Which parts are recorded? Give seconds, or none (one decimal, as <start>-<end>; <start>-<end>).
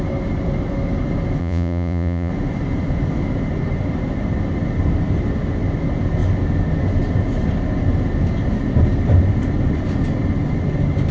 0.0-1.4; 2.3-11.1